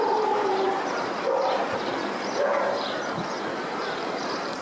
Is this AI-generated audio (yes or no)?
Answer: yes